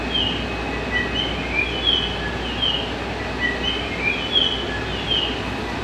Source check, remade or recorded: recorded